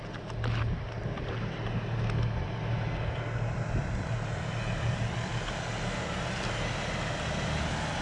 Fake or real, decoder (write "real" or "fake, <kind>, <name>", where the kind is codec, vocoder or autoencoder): real